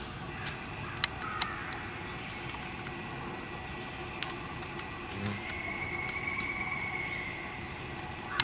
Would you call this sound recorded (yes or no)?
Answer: yes